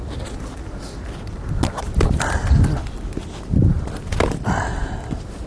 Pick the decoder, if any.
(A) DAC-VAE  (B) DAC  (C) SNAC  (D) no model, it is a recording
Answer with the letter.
D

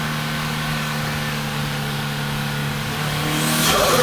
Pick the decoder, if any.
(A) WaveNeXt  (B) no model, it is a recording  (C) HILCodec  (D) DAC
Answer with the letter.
D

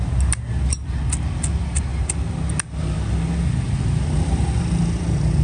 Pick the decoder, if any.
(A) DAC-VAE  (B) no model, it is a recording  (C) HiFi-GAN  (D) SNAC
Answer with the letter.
B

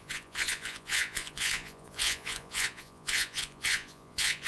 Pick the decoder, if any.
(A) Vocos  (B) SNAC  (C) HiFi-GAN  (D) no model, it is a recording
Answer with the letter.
A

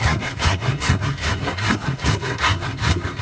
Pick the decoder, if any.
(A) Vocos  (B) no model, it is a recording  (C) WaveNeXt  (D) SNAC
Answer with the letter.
D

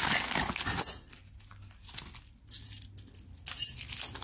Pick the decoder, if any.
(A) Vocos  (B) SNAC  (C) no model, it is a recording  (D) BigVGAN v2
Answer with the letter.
C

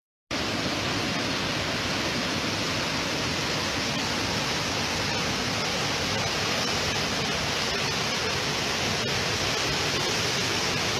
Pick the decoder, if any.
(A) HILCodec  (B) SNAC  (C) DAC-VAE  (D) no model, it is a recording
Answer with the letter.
D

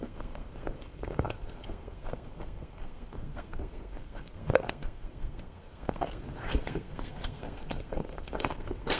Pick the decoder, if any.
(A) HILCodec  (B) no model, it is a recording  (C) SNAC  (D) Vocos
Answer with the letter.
C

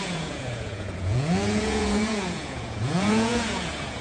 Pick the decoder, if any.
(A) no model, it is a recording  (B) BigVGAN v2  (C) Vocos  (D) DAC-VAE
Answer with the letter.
C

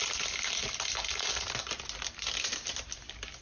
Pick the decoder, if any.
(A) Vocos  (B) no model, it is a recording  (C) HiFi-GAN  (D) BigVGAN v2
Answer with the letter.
B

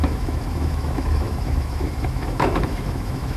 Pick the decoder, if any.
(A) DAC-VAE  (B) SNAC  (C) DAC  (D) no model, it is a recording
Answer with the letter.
A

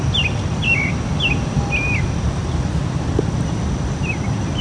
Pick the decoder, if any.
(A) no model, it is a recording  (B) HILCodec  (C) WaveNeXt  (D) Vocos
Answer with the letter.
A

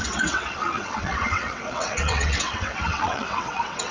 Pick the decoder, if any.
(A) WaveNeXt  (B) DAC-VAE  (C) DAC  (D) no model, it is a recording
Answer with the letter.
A